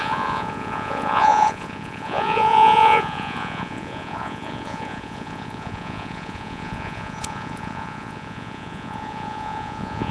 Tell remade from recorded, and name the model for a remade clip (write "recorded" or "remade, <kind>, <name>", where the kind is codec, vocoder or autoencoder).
remade, vocoder, Vocos